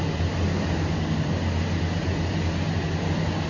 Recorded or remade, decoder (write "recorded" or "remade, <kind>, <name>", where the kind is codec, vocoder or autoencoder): recorded